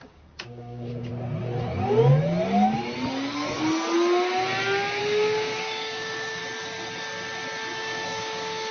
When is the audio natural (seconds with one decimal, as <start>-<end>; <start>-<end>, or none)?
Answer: 1.1-5.0; 6.4-7.7